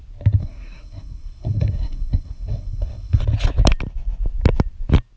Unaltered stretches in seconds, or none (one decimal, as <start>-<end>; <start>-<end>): 0.0-0.4; 3.2-5.2